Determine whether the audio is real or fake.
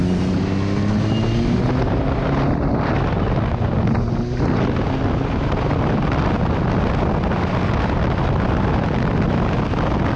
real